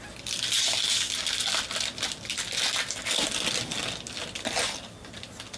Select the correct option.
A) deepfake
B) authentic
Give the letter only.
B